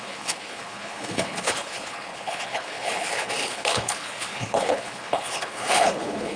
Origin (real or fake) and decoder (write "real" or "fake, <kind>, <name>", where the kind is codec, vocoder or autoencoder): fake, codec, HILCodec